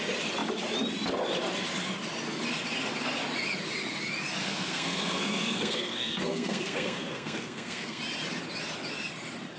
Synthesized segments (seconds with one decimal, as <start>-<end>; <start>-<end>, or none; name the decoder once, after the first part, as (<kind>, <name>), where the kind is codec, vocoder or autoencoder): 4.4-8.0 (codec, SNAC)